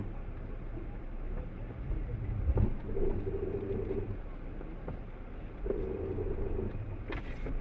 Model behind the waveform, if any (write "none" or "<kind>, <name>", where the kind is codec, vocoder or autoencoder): none